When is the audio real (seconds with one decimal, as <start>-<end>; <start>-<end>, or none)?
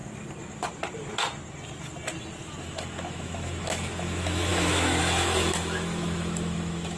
0.0-2.6